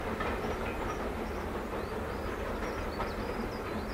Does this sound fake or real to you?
real